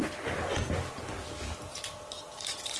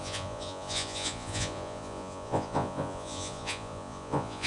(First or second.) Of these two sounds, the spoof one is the second